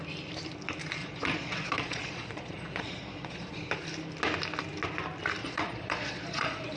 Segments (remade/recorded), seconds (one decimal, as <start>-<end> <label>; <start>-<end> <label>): 0.0-1.0 recorded; 1.0-3.6 remade; 3.6-5.4 recorded; 5.4-6.8 remade